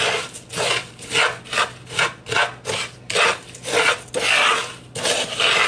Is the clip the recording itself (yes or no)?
yes